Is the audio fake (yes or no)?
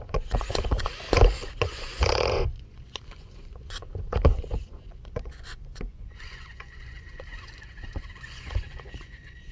yes